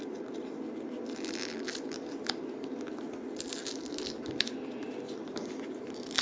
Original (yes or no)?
yes